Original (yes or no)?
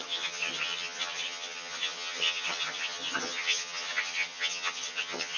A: no